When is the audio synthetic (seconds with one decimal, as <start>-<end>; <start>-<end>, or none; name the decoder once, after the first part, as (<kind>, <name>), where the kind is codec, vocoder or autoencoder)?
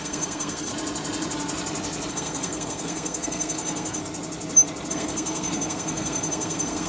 0.0-0.7 (codec, SNAC); 2.1-4.0; 4.9-6.9